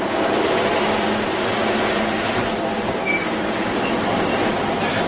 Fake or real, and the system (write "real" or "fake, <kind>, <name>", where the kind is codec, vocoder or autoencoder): fake, vocoder, BigVGAN v2